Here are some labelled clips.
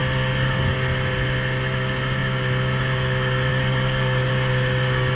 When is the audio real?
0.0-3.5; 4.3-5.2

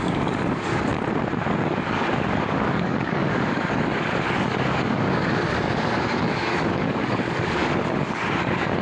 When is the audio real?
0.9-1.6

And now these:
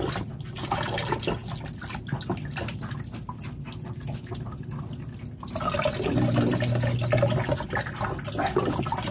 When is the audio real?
0.0-9.1

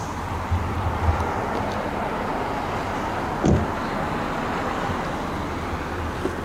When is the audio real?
0.0-6.4

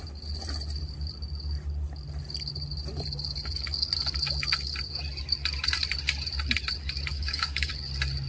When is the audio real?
0.0-7.1; 7.7-8.3